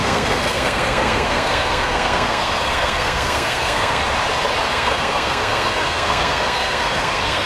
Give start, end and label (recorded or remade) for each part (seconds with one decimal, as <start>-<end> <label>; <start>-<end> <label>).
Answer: 0.0-4.0 remade; 4.0-4.7 recorded; 4.7-7.5 remade